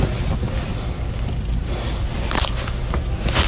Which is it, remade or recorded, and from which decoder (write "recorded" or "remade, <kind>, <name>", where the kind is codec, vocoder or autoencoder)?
recorded